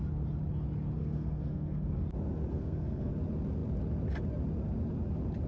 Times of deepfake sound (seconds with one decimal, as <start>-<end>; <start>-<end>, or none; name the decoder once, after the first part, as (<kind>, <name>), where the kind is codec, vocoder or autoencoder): 1.0-2.0 (codec, SNAC); 2.5-3.1